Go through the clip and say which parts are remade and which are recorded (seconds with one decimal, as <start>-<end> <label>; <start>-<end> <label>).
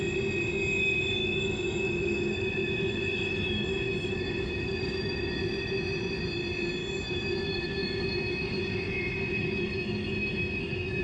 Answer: 0.0-1.2 recorded; 1.2-5.3 remade; 5.3-6.8 recorded; 6.8-11.0 remade